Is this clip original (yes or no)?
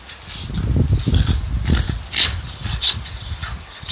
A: yes